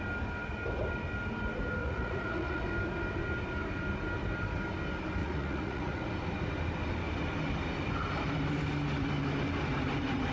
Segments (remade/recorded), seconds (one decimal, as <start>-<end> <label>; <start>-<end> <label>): 0.0-1.8 recorded; 1.8-2.6 remade; 2.6-5.2 recorded; 5.2-6.0 remade; 6.0-10.3 recorded